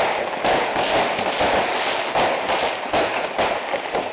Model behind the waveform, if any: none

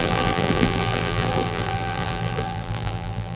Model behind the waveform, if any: vocoder, BigVGAN v2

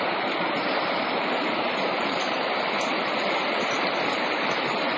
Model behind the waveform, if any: vocoder, BigVGAN v2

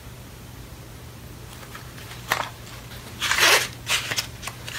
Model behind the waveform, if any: vocoder, BigVGAN v2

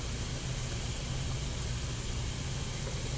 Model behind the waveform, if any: none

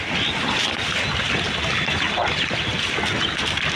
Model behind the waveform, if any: vocoder, BigVGAN v2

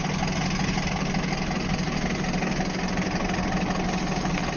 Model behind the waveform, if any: none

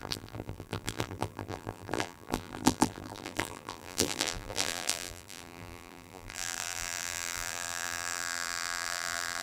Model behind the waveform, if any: vocoder, BigVGAN v2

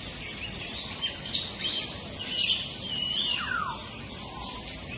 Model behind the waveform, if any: none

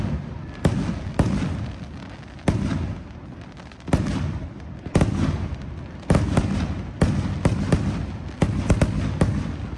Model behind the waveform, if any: none